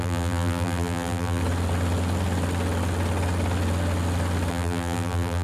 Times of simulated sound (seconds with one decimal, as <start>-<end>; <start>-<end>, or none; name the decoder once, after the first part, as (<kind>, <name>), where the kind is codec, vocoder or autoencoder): 0.0-1.4 (vocoder, BigVGAN v2); 4.5-5.4